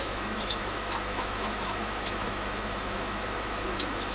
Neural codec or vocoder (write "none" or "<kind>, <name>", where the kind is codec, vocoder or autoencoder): autoencoder, DAC-VAE